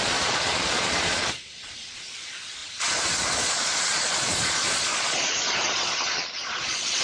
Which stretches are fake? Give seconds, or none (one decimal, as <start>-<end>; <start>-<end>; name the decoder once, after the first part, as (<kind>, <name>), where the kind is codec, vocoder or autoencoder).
0.0-7.0 (vocoder, Vocos)